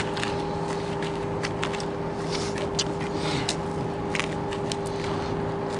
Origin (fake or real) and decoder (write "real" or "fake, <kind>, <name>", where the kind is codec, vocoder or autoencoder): real